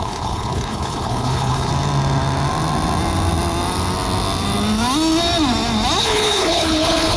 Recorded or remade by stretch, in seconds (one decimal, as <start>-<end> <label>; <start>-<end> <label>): 0.0-1.7 remade; 1.7-6.0 recorded; 6.0-7.2 remade